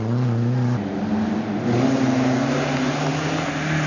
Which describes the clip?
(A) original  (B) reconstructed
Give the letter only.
A